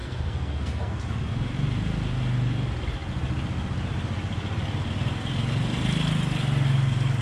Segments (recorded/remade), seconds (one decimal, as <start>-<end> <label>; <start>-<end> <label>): 0.0-1.0 remade; 1.0-7.2 recorded